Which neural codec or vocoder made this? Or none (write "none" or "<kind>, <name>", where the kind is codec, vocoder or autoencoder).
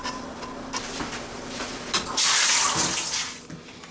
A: none